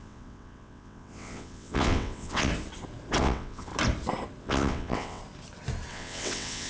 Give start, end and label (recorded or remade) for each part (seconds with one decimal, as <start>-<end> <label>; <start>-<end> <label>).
0.0-2.5 remade; 2.5-3.2 recorded; 3.2-3.7 remade; 3.7-4.4 recorded; 4.4-5.2 remade; 5.2-5.9 recorded; 5.9-6.7 remade

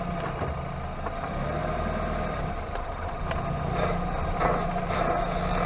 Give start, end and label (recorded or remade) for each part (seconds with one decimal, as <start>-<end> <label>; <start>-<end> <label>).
0.0-1.6 recorded; 1.6-5.0 remade; 5.0-5.7 recorded

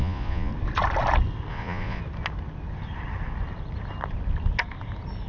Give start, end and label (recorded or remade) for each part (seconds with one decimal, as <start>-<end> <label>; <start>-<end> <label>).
0.0-0.5 remade; 0.5-1.5 recorded; 1.5-2.0 remade; 2.0-5.3 recorded

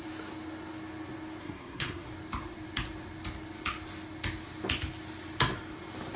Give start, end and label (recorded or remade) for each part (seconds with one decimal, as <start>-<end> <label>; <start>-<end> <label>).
0.0-1.4 recorded; 1.4-2.1 remade; 2.1-6.2 recorded

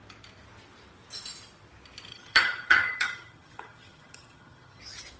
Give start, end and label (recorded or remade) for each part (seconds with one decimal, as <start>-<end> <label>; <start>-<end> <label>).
0.0-2.1 recorded; 2.1-4.8 remade; 4.8-5.2 recorded

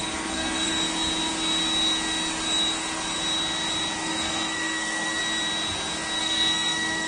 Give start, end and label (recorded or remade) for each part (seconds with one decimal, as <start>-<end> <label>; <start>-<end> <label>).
0.0-0.7 remade; 0.7-4.0 recorded; 4.0-5.2 remade; 5.2-6.2 recorded; 6.2-7.1 remade

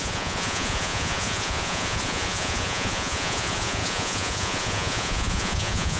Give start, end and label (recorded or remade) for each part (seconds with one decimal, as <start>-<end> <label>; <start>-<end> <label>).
0.0-6.0 remade